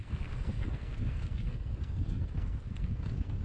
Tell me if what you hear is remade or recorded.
remade